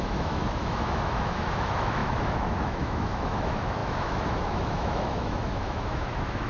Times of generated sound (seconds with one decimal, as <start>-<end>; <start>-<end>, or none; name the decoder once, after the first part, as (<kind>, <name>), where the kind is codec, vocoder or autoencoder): 0.0-6.5 (autoencoder, DAC-VAE)